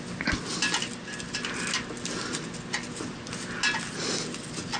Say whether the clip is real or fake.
real